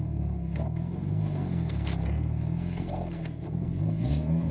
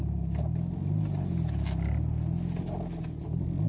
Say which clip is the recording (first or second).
second